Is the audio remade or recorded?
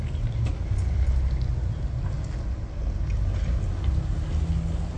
recorded